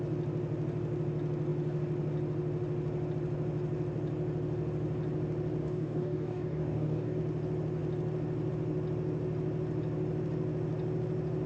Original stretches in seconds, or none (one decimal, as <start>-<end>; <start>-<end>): 0.0-5.6; 7.2-11.5